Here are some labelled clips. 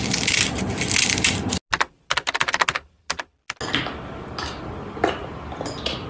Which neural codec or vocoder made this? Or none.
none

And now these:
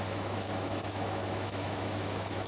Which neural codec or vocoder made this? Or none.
autoencoder, DAC-VAE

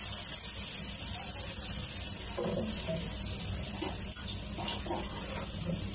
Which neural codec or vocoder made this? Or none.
none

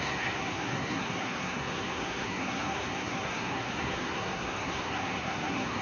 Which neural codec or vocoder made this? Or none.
codec, SNAC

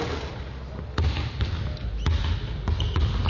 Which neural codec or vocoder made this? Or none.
none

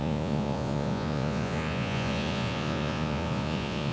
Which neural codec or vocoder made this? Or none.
vocoder, Vocos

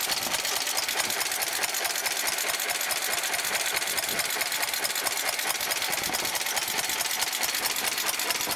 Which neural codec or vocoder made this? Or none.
none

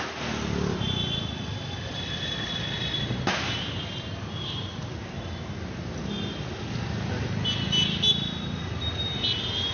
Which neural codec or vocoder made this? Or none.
none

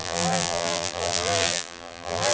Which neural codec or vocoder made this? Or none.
vocoder, BigVGAN v2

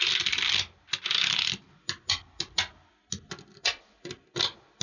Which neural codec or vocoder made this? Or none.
none